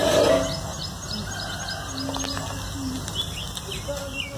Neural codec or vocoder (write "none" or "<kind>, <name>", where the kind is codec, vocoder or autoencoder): none